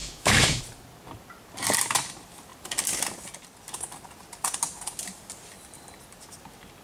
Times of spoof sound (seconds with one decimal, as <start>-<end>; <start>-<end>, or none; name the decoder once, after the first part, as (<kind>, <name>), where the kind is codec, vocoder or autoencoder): 0.0-0.6 (autoencoder, DAC-VAE)